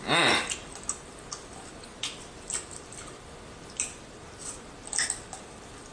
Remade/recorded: recorded